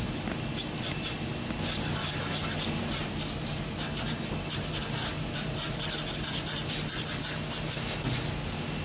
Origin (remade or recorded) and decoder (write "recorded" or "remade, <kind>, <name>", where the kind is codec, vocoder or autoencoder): recorded